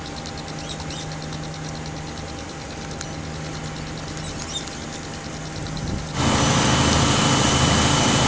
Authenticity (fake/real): real